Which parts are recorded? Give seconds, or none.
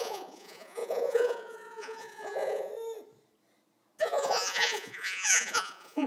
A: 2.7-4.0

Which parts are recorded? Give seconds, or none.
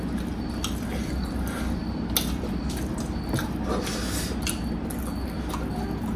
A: 0.0-6.2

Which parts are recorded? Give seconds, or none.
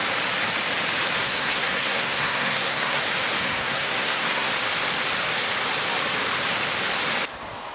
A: 0.0-1.2; 3.0-3.4; 4.5-7.7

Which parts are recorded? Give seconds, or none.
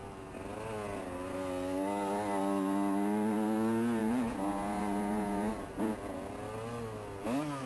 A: 0.0-4.0; 6.3-7.7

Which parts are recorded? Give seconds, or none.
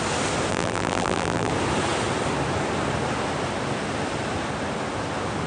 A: 0.0-0.5; 1.5-5.5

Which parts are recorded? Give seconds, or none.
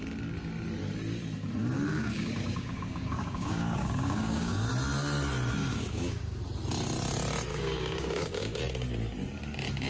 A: 0.0-1.9; 4.7-5.6; 6.4-7.5; 8.6-9.9